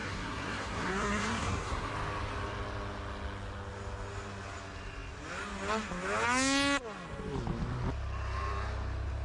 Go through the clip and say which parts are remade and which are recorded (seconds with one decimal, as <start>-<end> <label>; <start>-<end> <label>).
0.0-1.9 remade; 1.9-9.2 recorded